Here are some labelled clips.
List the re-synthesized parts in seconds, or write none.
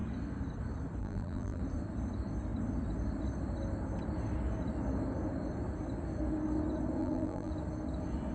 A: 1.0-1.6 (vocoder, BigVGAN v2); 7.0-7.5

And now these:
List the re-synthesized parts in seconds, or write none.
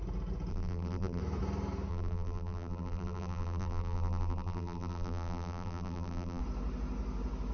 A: 0.5-1.2 (vocoder, BigVGAN v2); 1.9-6.4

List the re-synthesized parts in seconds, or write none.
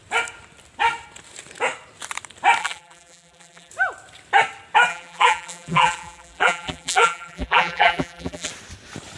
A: 2.6-3.7 (vocoder, BigVGAN v2); 4.9-8.5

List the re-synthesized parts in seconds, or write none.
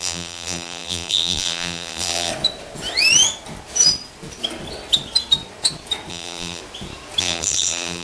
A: 0.0-2.3 (vocoder, BigVGAN v2); 6.1-6.6; 7.2-8.0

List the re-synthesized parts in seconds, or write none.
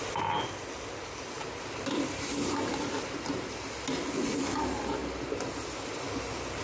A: none